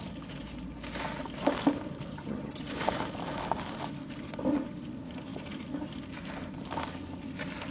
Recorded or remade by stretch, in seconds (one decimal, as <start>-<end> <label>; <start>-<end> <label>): 0.0-2.1 recorded; 2.1-2.7 remade; 2.7-7.7 recorded